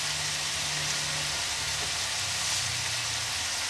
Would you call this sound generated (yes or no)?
no